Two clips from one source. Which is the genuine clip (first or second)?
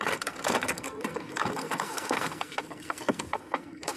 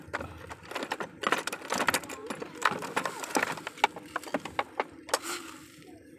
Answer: second